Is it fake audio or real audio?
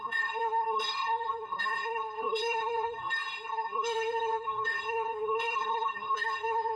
fake